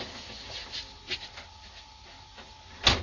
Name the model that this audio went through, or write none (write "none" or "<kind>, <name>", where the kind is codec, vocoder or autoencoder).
none